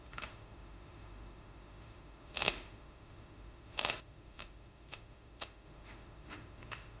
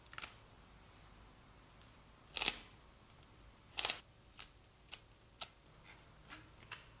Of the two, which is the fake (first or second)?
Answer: first